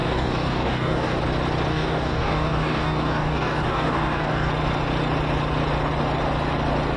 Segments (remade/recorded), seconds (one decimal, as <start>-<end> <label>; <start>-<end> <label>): 0.0-1.2 remade; 1.2-1.7 recorded; 1.7-4.5 remade; 4.5-7.0 recorded